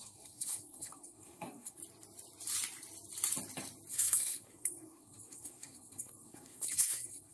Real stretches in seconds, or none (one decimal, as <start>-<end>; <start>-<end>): 1.8-3.9